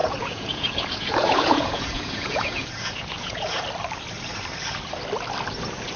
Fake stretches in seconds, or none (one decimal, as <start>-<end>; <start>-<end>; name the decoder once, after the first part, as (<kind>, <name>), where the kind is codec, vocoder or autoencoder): 0.0-3.6 (vocoder, Vocos)

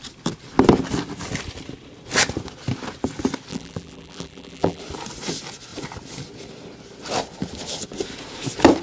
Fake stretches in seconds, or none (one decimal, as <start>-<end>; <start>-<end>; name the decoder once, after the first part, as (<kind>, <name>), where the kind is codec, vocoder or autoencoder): 3.5-4.8 (vocoder, BigVGAN v2)

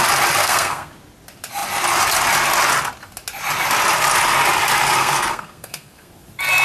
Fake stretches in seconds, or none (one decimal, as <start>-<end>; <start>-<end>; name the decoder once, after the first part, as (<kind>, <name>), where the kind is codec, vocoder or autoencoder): 0.4-0.9 (codec, SNAC); 5.0-6.1

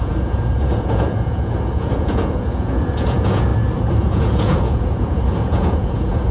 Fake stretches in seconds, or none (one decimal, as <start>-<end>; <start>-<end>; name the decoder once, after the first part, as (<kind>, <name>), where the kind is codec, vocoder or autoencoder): 0.0-3.5 (vocoder, Vocos); 4.0-6.3

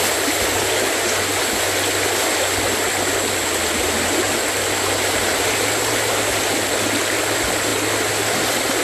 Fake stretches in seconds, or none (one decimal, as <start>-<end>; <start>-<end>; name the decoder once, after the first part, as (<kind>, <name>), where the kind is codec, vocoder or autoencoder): none

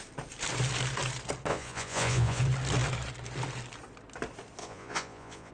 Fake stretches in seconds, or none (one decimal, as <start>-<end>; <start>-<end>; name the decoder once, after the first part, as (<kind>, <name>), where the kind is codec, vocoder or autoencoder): 1.5-2.4 (vocoder, Vocos); 4.6-5.5

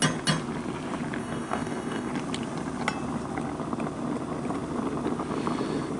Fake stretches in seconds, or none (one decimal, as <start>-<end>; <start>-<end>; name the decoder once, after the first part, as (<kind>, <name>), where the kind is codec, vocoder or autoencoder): 1.2-2.1 (codec, DAC)

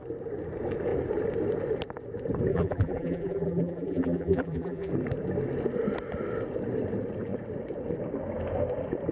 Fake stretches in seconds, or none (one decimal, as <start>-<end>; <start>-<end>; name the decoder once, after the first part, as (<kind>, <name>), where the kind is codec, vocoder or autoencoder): 2.5-4.9 (vocoder, BigVGAN v2)